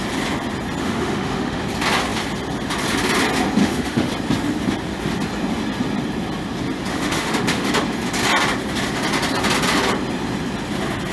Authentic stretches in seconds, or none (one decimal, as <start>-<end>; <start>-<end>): 0.0-0.8; 1.6-3.6; 4.1-6.9; 7.7-11.1